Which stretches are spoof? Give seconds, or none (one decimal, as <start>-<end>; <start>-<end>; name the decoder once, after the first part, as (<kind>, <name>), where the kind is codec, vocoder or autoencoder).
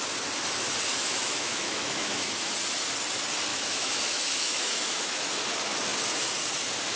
0.9-2.5 (autoencoder, DAC-VAE); 3.5-5.3